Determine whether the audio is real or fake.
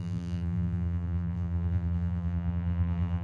fake